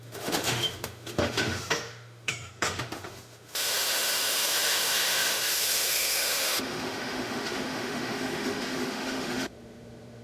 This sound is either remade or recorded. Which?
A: remade